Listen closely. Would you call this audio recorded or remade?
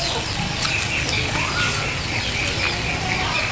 recorded